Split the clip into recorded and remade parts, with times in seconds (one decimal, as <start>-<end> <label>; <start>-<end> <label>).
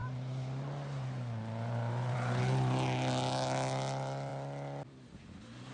0.0-2.4 remade; 2.4-5.7 recorded